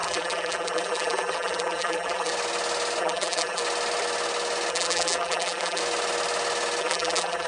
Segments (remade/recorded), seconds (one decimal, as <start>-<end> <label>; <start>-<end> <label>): 0.0-2.3 remade; 2.3-3.0 recorded; 3.0-3.6 remade; 3.6-4.7 recorded; 4.7-5.8 remade; 5.8-6.8 recorded; 6.8-7.5 remade